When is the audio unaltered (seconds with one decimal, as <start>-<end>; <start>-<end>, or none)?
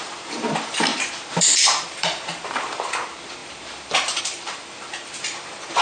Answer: none